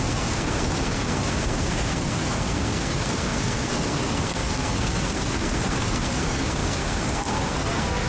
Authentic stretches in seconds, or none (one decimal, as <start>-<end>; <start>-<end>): none